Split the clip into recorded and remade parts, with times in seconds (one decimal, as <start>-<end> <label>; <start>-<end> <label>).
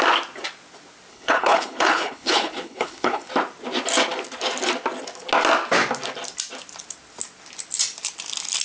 0.0-1.1 recorded; 1.1-3.3 remade; 3.3-8.6 recorded